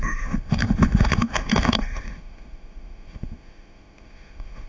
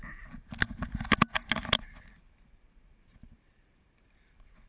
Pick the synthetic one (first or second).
first